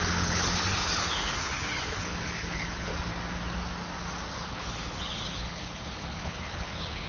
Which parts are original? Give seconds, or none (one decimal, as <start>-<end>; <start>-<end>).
2.9-4.5

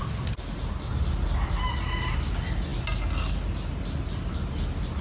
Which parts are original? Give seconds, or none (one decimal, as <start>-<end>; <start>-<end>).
0.0-5.0

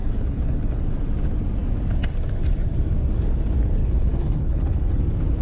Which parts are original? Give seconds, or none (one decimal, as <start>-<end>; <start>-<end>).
0.8-3.8; 5.0-5.4